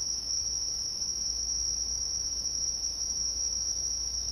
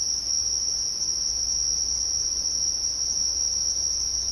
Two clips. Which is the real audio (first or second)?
second